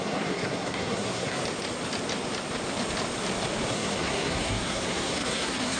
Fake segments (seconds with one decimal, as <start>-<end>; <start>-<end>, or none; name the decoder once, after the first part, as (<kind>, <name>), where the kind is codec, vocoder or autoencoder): 0.0-1.4 (codec, SNAC); 3.7-5.8